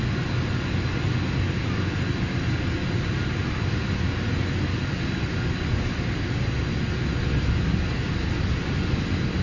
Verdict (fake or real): real